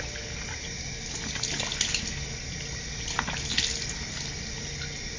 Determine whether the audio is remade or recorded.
recorded